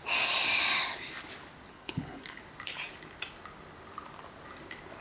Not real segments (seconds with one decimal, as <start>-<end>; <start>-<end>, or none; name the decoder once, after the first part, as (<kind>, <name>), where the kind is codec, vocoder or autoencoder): 1.7-2.4 (codec, HILCodec)